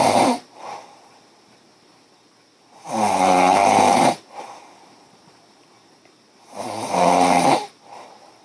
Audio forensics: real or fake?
fake